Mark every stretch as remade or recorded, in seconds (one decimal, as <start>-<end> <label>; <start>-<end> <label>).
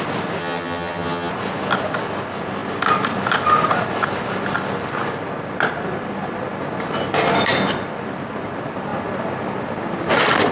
0.0-0.4 recorded; 0.4-1.3 remade; 1.3-10.5 recorded